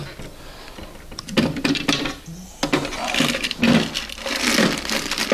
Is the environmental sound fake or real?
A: real